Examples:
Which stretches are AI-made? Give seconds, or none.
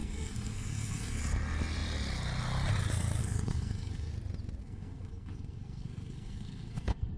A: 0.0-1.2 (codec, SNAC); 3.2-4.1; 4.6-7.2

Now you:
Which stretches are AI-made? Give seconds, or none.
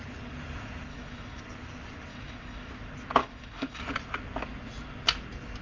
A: 0.9-1.4 (autoencoder, DAC-VAE); 2.1-2.7; 3.2-3.8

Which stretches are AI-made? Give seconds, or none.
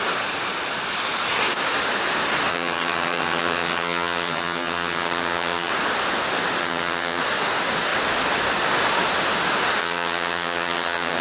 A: 2.5-5.7 (vocoder, HiFi-GAN); 6.6-7.2; 9.8-11.2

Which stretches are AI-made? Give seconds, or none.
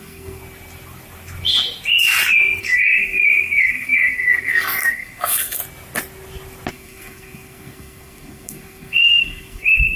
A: 0.0-0.4 (codec, SNAC); 2.6-5.6; 6.7-10.0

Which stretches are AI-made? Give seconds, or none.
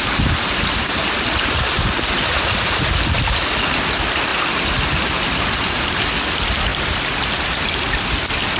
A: none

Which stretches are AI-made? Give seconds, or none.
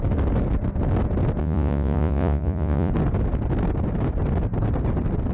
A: 1.4-2.9 (vocoder, Vocos)